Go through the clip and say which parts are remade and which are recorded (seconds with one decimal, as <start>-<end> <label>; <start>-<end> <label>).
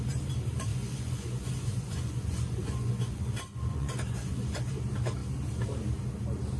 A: 0.0-0.7 recorded; 0.7-4.7 remade; 4.7-6.6 recorded